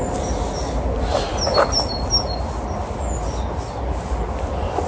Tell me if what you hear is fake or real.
real